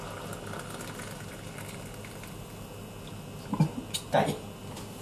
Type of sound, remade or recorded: recorded